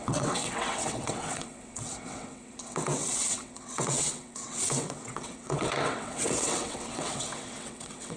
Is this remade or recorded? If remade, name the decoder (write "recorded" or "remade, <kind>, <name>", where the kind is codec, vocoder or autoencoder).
remade, vocoder, WaveNeXt